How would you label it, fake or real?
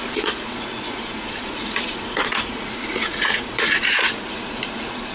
fake